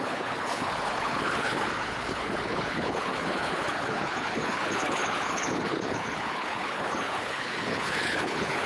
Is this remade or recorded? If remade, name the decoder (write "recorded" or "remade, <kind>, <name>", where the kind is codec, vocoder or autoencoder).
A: remade, codec, HILCodec